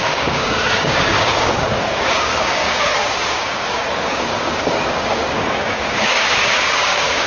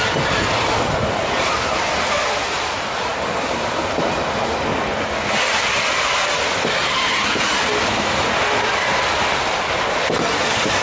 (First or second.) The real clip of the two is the second